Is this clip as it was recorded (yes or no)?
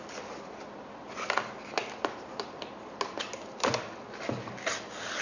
yes